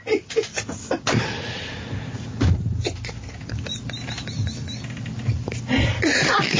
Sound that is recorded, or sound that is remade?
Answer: recorded